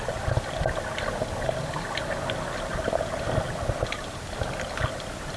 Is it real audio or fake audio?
real